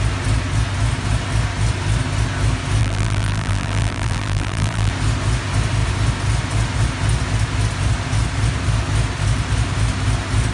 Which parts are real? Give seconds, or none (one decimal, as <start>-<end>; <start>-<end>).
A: 0.0-2.8; 4.9-10.5

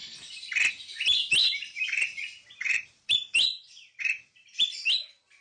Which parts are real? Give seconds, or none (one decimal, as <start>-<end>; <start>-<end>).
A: 0.0-0.7; 3.5-4.0

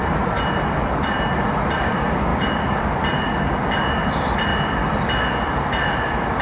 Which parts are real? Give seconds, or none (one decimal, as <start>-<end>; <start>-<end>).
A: 0.0-2.3; 2.8-6.4

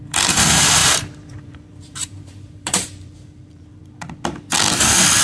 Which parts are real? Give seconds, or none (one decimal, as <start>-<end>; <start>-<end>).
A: 0.0-0.8; 3.9-5.2

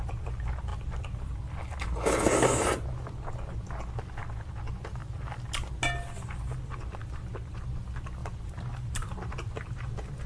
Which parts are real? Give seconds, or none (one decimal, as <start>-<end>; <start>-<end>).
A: 0.0-5.0; 5.7-8.2; 9.9-10.3